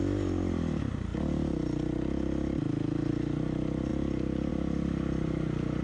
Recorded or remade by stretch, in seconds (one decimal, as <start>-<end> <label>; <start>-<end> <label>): 0.0-5.8 recorded